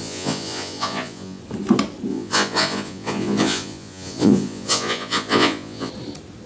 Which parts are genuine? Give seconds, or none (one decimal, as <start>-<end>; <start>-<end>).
1.4-2.1; 5.9-6.5